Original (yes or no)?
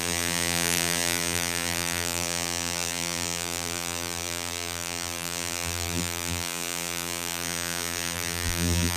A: no